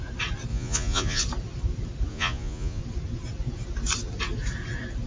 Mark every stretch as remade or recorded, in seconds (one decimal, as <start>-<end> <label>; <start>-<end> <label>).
0.0-0.5 recorded; 0.5-1.2 remade; 1.2-2.1 recorded; 2.1-2.8 remade; 2.8-5.1 recorded